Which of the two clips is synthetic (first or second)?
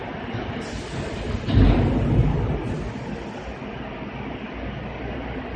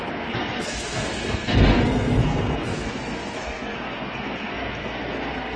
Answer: second